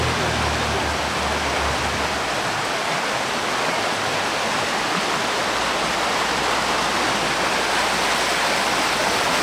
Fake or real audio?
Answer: real